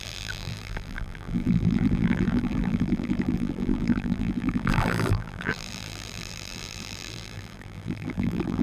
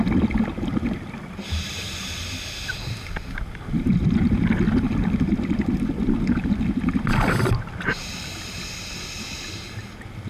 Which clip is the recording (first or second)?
second